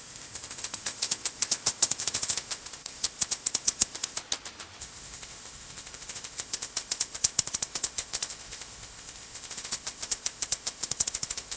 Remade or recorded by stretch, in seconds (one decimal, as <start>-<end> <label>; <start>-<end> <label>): 0.0-4.2 remade; 4.2-4.8 recorded; 4.8-11.6 remade